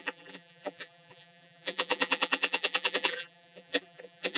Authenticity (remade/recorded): remade